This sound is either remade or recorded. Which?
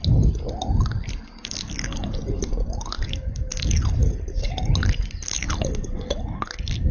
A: recorded